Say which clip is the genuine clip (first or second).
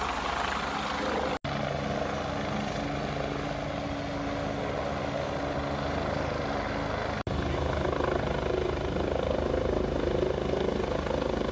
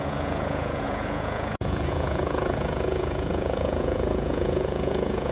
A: first